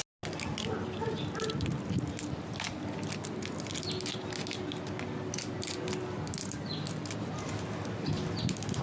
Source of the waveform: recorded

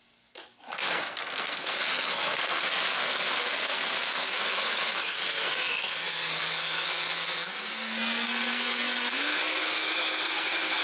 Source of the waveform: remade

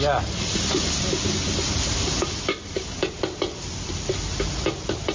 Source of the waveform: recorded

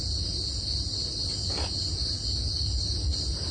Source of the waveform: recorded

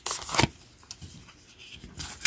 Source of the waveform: recorded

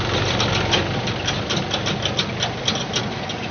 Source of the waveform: recorded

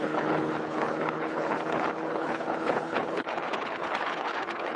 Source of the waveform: remade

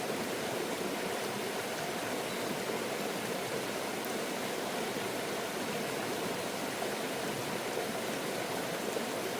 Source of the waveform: recorded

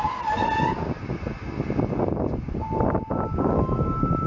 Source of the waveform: recorded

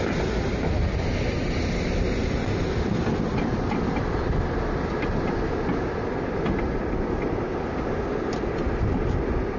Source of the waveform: recorded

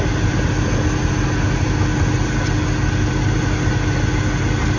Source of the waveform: recorded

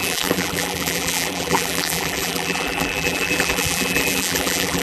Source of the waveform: remade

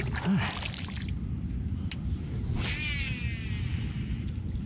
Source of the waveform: recorded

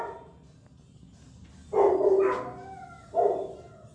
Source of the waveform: recorded